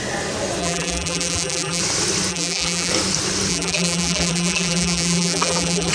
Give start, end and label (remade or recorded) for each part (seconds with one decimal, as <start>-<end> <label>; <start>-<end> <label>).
0.0-0.6 recorded; 0.6-1.8 remade; 1.8-2.3 recorded; 2.3-2.9 remade; 2.9-3.5 recorded; 3.5-5.9 remade